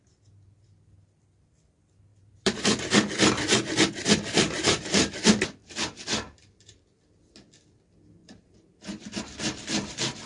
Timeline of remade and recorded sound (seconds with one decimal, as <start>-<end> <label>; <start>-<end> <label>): 0.0-2.1 recorded; 2.1-2.6 remade; 2.6-5.6 recorded; 5.6-6.8 remade; 6.8-8.2 recorded; 8.2-9.2 remade; 9.2-10.3 recorded